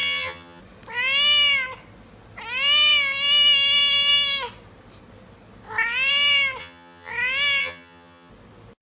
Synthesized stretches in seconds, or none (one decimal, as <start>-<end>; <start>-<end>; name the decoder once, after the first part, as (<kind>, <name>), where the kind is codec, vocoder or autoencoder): 0.0-0.6 (vocoder, HiFi-GAN); 6.6-7.1; 7.6-8.3